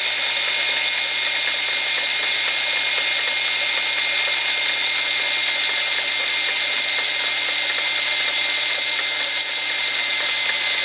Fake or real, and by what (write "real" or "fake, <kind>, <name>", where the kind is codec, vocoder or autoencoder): real